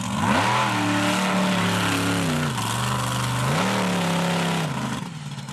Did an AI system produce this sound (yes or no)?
no